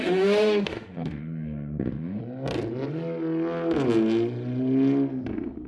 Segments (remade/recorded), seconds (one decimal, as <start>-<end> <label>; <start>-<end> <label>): 0.0-2.2 remade; 2.2-5.7 recorded